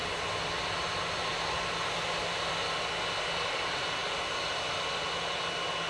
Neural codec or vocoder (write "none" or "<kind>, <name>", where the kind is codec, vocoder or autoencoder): none